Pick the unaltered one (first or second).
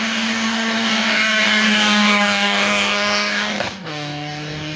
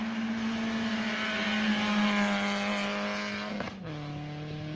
second